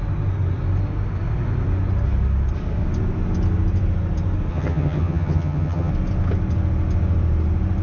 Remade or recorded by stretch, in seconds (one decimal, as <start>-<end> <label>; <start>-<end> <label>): 0.0-4.5 recorded; 4.5-5.9 remade; 5.9-7.8 recorded